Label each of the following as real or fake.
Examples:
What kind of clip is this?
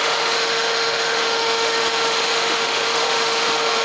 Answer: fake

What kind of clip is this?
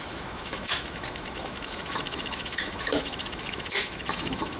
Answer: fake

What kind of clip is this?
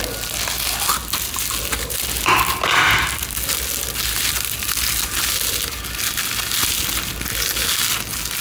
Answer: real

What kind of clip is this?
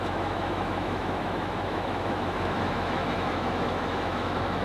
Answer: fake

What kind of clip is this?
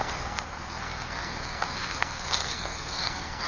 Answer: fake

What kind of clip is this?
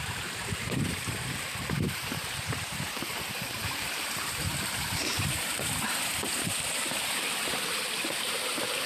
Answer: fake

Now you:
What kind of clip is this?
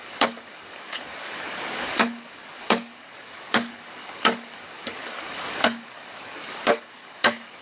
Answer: fake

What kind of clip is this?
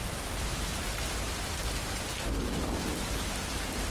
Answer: real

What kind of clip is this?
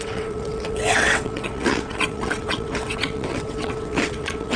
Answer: fake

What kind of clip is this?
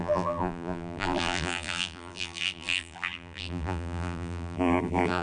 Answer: fake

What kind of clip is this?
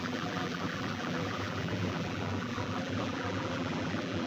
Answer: fake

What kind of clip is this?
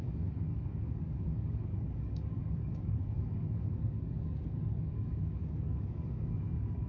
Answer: fake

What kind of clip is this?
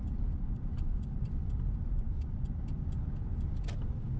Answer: real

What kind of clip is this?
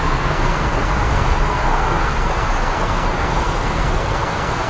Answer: fake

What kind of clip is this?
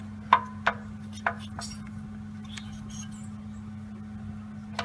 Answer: real